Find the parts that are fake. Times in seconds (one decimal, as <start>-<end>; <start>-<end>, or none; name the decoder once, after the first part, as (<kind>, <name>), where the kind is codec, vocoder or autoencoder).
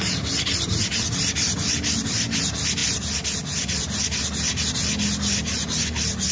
none